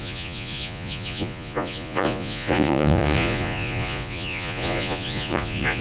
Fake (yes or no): yes